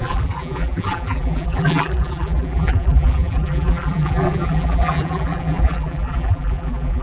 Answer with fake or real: fake